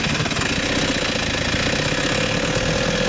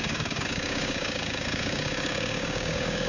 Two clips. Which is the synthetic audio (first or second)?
second